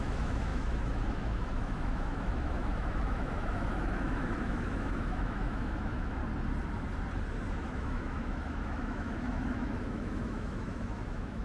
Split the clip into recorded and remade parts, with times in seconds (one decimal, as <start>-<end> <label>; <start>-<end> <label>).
0.0-6.2 remade; 6.2-7.5 recorded; 7.5-11.4 remade